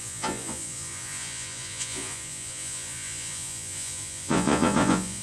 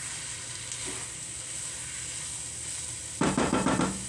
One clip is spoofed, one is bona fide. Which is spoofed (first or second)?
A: first